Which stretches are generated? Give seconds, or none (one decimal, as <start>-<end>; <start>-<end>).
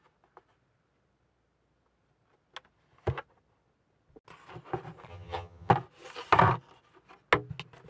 5.1-5.7